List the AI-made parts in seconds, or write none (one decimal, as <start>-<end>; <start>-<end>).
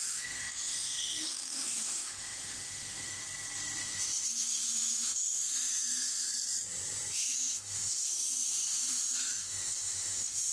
0.0-3.2; 3.8-6.3; 7.1-10.5